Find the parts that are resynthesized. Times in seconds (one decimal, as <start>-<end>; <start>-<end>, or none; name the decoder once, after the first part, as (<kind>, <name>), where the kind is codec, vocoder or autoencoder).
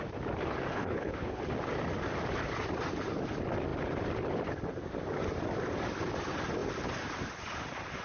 0.7-1.4 (codec, HILCodec)